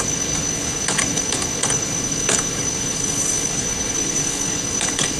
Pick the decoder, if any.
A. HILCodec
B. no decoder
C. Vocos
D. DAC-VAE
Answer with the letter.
A